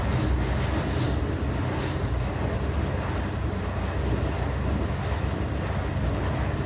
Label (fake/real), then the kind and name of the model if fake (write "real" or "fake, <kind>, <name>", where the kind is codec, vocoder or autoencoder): real